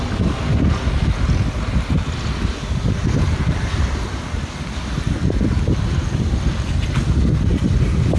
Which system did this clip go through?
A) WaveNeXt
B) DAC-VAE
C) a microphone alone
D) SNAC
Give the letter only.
C